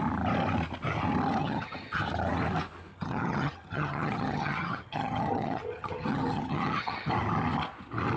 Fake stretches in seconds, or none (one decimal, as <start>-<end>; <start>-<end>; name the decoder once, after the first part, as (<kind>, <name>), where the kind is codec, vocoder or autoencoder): 1.4-2.0 (vocoder, HiFi-GAN); 2.9-7.1